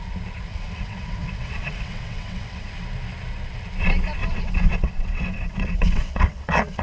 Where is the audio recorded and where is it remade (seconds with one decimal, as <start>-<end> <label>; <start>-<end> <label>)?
0.0-0.5 recorded; 0.5-2.7 remade; 2.7-4.2 recorded; 4.2-6.8 remade